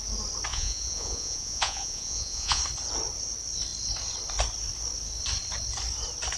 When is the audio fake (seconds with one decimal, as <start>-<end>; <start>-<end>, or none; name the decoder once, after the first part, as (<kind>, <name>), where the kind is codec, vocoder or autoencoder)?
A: 0.5-2.6 (vocoder, Vocos)